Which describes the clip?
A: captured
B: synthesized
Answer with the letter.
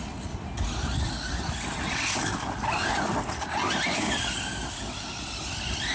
A